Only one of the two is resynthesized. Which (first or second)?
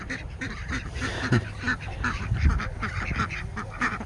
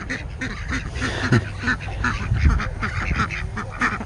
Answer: first